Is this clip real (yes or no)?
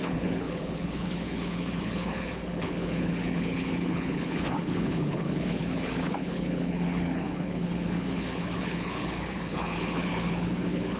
no